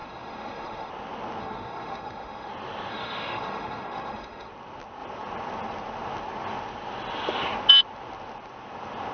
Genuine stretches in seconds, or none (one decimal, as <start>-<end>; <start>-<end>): 0.9-1.4; 2.5-2.9; 4.5-9.1